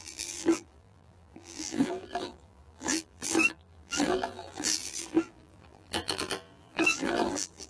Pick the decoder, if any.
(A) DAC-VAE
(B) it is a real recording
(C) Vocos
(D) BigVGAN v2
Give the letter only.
D